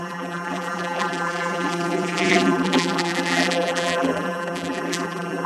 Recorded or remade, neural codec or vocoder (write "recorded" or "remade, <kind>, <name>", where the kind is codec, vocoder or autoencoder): remade, vocoder, BigVGAN v2